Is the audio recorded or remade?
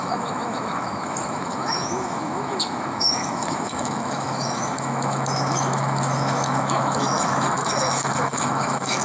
remade